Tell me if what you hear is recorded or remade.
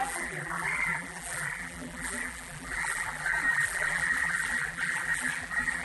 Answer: remade